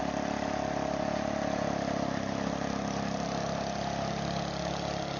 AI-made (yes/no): no